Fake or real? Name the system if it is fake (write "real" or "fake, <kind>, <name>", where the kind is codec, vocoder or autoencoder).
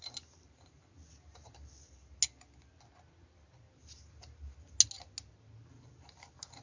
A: real